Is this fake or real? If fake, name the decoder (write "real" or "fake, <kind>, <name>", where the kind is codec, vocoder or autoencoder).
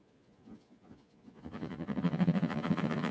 fake, vocoder, Vocos